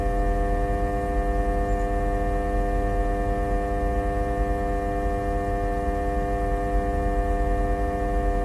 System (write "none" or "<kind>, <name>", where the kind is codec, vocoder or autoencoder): none